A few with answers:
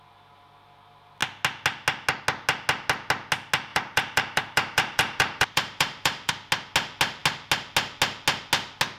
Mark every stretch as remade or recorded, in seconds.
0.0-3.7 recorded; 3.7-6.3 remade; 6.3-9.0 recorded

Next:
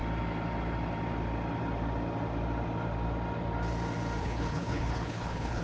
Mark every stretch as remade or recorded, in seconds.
0.0-4.2 recorded; 4.2-5.6 remade

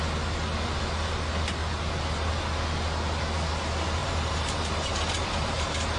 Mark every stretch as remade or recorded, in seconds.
0.0-1.6 recorded; 1.6-2.3 remade; 2.3-4.0 recorded; 4.0-6.0 remade

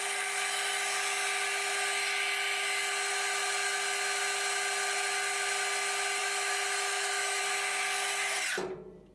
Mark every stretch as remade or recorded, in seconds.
0.0-6.2 recorded; 6.2-7.4 remade; 7.4-9.1 recorded

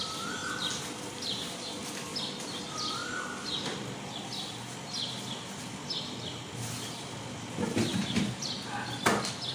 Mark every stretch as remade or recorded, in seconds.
0.0-9.5 recorded